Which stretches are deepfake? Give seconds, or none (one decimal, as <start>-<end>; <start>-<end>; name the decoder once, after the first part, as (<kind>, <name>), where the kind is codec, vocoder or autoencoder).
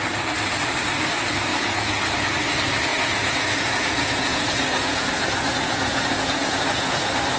1.5-2.2 (vocoder, Vocos); 2.9-7.4